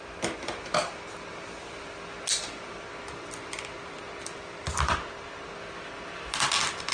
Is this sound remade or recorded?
recorded